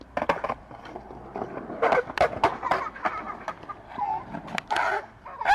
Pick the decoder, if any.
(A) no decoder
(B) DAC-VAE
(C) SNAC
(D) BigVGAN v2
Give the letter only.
A